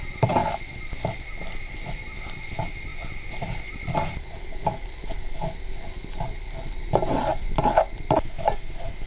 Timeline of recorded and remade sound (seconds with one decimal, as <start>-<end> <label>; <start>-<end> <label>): 0.0-9.1 recorded